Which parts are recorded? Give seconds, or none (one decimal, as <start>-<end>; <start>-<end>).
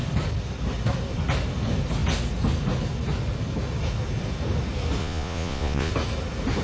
0.0-5.0; 5.9-6.6